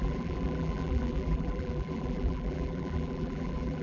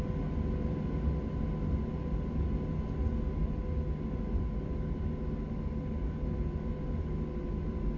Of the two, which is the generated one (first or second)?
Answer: first